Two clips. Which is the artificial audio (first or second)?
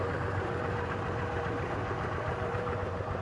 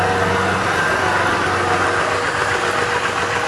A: first